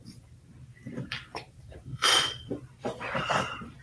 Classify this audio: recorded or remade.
remade